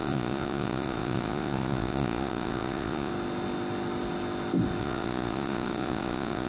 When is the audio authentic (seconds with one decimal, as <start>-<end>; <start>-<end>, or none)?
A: 3.1-4.8